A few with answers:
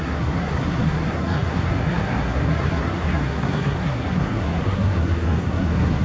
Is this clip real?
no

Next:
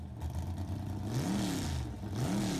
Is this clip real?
yes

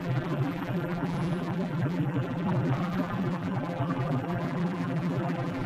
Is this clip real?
no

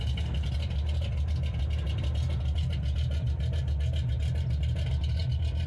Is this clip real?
yes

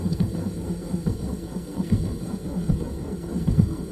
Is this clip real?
no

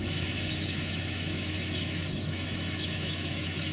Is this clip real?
no